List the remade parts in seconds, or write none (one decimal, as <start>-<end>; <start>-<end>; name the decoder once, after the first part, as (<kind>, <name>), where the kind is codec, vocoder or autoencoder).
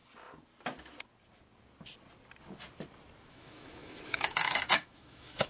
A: 3.3-5.5 (autoencoder, DAC-VAE)